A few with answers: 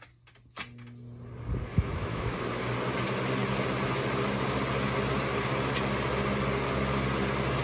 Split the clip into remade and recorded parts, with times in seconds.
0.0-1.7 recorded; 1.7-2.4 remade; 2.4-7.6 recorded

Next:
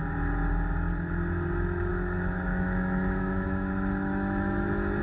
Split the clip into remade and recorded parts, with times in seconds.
0.0-1.9 recorded; 1.9-5.0 remade

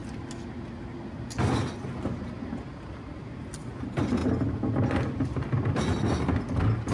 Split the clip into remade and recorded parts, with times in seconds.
0.0-6.9 recorded

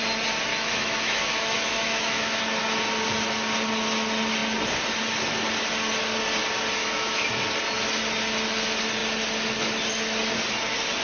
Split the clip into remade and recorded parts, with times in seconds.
0.0-0.5 recorded; 0.5-2.4 remade; 2.4-6.8 recorded; 6.8-7.3 remade; 7.3-11.0 recorded

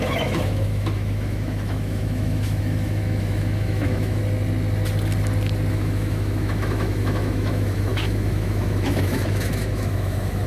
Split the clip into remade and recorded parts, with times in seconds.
0.0-4.2 remade; 4.2-5.7 recorded; 5.7-10.5 remade

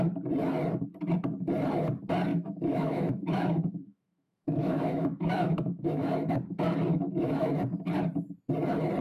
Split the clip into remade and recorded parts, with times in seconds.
0.0-2.3 recorded; 2.3-6.3 remade; 6.3-6.9 recorded; 6.9-7.5 remade; 7.5-9.0 recorded